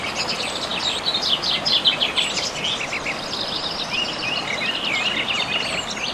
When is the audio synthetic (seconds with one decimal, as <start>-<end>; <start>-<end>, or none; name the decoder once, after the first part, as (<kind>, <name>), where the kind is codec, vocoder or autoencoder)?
none